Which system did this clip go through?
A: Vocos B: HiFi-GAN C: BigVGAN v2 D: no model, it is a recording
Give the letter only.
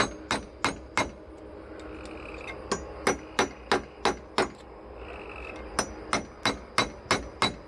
D